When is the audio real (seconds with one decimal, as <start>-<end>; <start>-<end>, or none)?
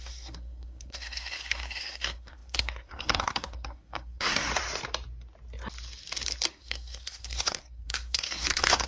4.5-6.5